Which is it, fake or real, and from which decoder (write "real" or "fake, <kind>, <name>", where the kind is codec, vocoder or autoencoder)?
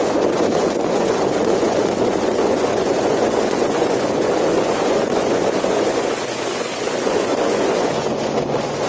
fake, vocoder, Vocos